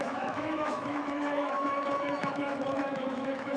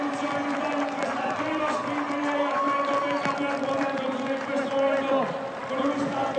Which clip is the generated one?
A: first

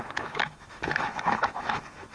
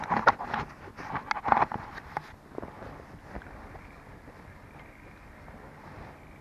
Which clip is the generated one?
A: first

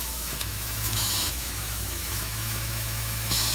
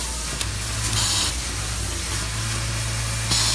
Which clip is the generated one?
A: first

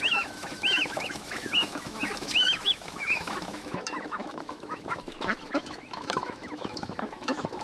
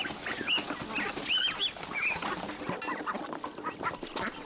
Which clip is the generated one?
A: first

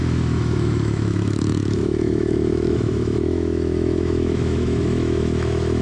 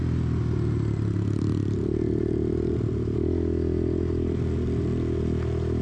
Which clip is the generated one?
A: first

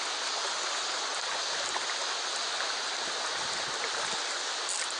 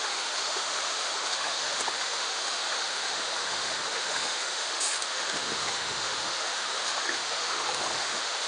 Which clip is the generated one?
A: second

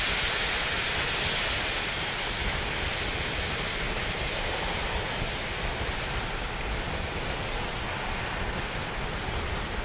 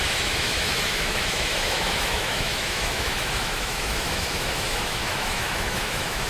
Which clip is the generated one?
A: second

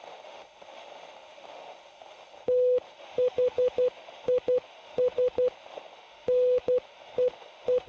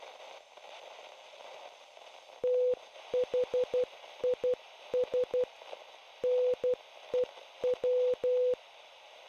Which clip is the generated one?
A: first